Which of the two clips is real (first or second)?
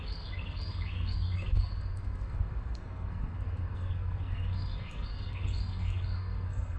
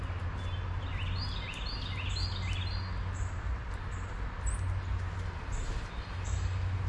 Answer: second